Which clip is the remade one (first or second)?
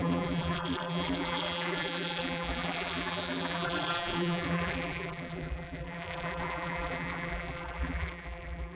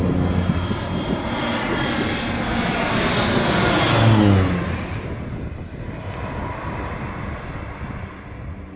first